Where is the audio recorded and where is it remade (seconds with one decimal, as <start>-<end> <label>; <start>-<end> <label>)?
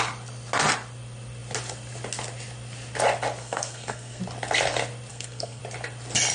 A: 0.0-3.4 recorded; 3.4-4.2 remade; 4.2-5.1 recorded; 5.1-5.6 remade; 5.6-6.3 recorded